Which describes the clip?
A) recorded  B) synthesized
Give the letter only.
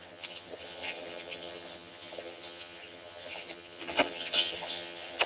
B